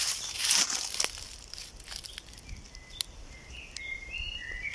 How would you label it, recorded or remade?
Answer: recorded